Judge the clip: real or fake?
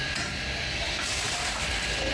real